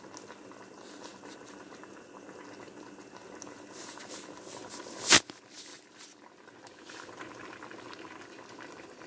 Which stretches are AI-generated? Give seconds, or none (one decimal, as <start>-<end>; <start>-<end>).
5.7-6.2